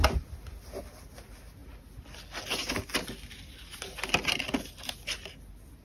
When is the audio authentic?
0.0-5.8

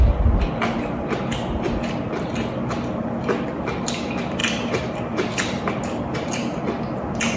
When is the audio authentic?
0.0-7.4

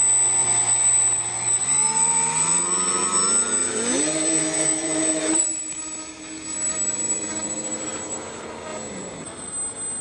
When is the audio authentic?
0.0-0.4; 3.0-3.6; 5.8-8.7; 9.5-10.0

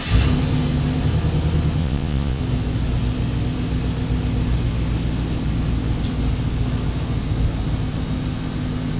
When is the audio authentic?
0.0-1.8; 2.4-9.0

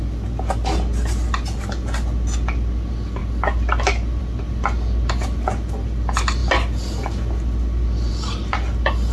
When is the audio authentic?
0.0-9.1

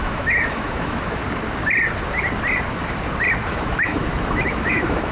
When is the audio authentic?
1.2-3.5

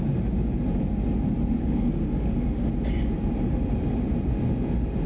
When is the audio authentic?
0.0-1.6; 2.7-5.1

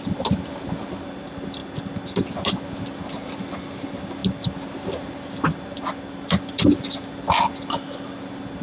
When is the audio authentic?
0.0-8.6